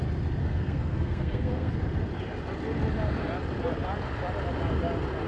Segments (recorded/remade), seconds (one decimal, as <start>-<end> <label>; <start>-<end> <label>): 0.0-0.4 recorded; 0.4-1.7 remade; 1.7-5.3 recorded

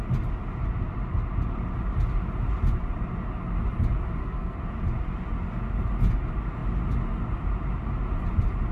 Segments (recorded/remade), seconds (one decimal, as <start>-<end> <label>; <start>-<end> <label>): 0.0-4.2 recorded; 4.2-4.7 remade; 4.7-8.7 recorded

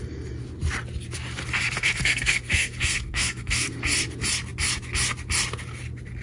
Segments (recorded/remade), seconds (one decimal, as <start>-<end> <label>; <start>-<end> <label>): 0.0-1.8 recorded; 1.8-3.8 remade; 3.8-6.2 recorded

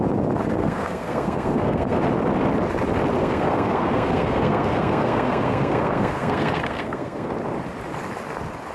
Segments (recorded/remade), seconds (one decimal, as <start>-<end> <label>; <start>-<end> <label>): 0.0-0.6 recorded; 0.6-2.0 remade; 2.0-3.2 recorded; 3.2-7.3 remade; 7.3-8.7 recorded

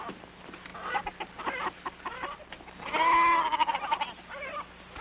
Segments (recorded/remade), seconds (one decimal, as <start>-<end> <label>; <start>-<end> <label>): 0.0-5.0 recorded

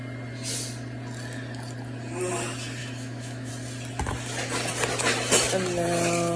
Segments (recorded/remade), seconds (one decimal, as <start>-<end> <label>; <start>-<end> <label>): 0.0-2.8 recorded; 2.8-3.5 remade; 3.5-6.4 recorded